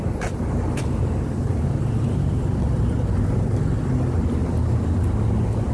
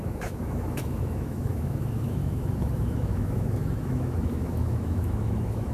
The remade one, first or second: second